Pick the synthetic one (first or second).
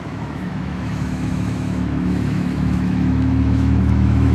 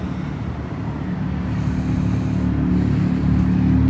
first